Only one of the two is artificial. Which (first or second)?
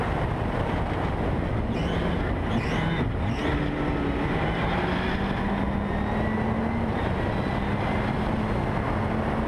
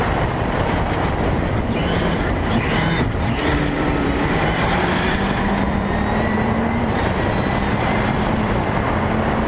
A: second